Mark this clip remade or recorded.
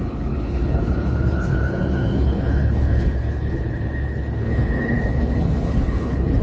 remade